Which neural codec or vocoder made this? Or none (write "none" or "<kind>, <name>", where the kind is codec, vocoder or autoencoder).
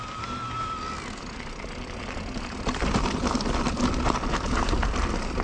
none